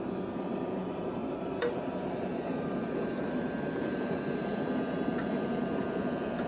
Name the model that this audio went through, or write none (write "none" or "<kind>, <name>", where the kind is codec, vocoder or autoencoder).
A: vocoder, BigVGAN v2